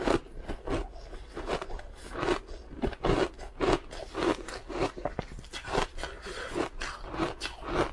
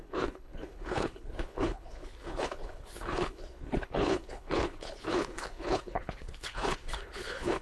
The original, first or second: first